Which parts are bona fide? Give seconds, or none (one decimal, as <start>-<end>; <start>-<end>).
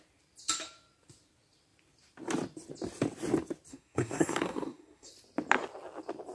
0.0-3.7; 5.1-6.3